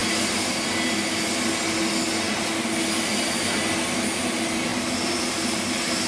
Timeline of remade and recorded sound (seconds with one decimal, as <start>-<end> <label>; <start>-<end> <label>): 0.0-6.1 recorded